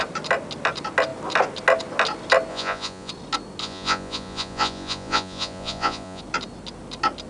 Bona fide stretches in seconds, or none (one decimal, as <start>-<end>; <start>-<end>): 0.0-2.5; 3.1-3.6; 6.2-7.3